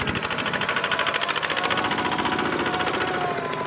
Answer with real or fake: real